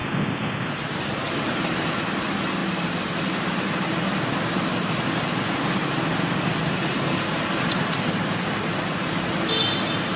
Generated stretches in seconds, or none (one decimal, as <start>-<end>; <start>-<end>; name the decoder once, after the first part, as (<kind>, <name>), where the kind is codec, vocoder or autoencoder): 0.0-0.7 (codec, ZipCodec)